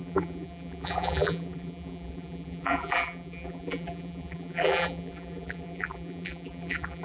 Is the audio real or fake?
fake